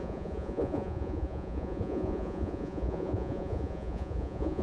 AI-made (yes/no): yes